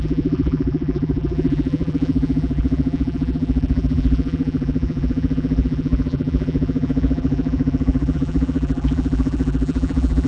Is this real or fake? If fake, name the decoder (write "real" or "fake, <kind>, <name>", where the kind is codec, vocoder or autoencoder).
fake, vocoder, BigVGAN v2